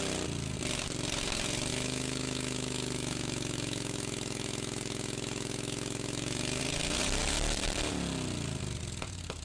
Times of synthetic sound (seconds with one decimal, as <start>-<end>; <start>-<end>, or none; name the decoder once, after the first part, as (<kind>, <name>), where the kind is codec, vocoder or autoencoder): 1.7-6.6 (autoencoder, DAC-VAE)